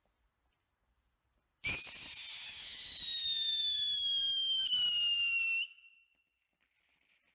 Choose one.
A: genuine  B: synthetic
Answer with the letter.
A